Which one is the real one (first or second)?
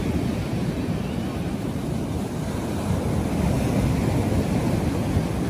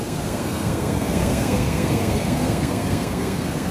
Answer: first